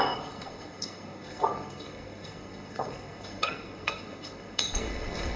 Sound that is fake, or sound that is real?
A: fake